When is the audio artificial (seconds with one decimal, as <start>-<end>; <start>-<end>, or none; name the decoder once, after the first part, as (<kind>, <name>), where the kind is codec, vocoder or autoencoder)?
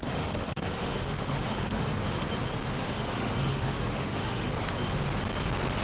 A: 0.0-1.9 (autoencoder, DAC-VAE); 2.7-4.5